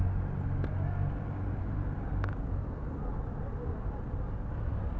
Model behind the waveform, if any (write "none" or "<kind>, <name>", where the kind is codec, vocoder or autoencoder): none